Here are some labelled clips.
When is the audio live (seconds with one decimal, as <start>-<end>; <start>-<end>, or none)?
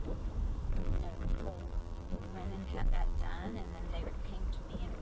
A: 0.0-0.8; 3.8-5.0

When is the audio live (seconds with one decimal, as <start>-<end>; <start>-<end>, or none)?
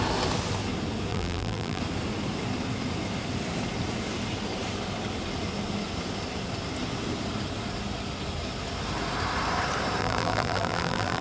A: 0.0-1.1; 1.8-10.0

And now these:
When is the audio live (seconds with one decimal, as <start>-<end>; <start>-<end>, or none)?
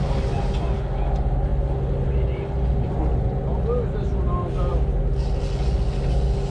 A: 0.0-6.5